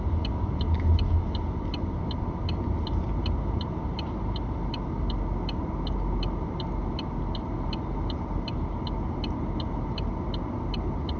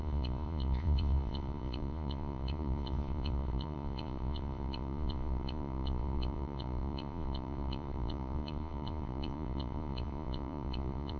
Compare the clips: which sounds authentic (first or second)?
first